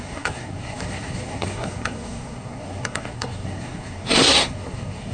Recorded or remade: remade